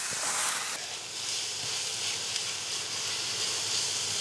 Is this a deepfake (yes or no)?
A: no